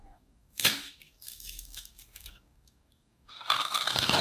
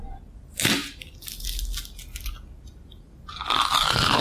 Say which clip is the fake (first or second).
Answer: first